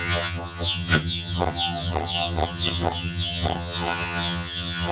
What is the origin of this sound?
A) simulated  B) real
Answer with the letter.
A